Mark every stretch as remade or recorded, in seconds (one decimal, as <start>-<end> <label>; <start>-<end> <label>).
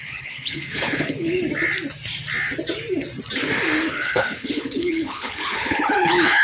0.0-1.4 remade; 1.4-3.9 recorded; 3.9-6.4 remade